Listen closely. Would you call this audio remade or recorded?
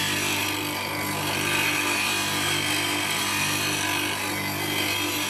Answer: recorded